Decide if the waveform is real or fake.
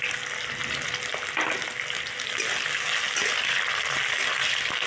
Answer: real